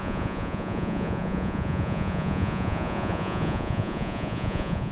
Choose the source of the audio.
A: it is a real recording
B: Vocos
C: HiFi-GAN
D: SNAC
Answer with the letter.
B